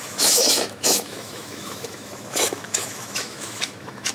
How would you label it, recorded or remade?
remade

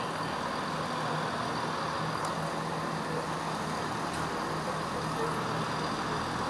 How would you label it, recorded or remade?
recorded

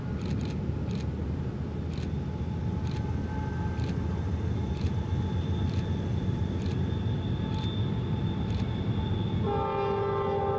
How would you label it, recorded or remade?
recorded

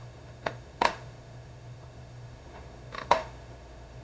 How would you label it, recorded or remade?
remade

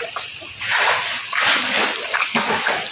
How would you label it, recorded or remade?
recorded